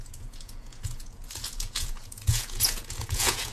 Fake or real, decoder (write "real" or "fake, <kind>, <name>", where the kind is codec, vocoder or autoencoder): fake, vocoder, Vocos